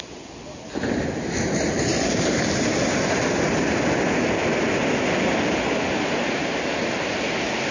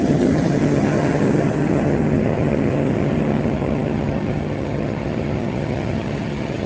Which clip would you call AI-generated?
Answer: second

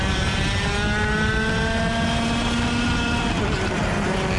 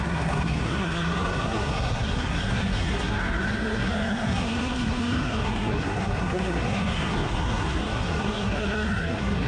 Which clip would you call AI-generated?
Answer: second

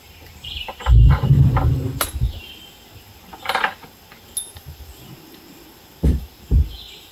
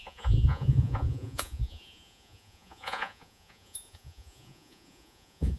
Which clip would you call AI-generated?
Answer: second